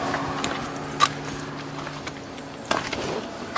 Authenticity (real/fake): real